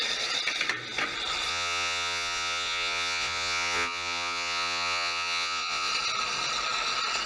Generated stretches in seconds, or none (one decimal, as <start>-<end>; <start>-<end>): 1.5-5.9